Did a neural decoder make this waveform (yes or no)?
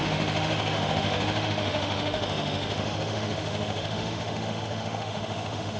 yes